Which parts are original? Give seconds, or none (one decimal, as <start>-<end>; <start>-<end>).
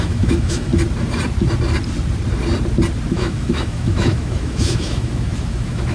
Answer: 0.7-3.1